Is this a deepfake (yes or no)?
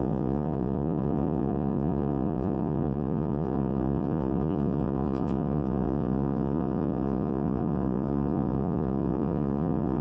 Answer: yes